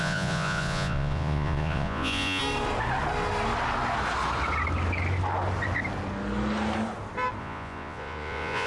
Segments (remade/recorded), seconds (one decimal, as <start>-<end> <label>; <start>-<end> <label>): 0.0-2.4 remade; 2.4-7.4 recorded; 7.4-8.7 remade